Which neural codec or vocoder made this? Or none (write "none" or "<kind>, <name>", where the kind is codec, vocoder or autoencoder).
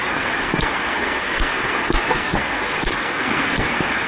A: codec, SNAC